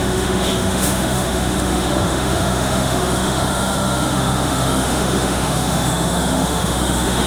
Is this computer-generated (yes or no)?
yes